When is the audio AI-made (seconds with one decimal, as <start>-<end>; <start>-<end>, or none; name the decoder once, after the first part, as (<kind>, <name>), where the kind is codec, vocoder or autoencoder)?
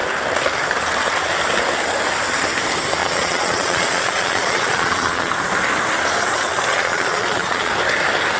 3.0-5.3 (vocoder, Vocos); 6.7-7.7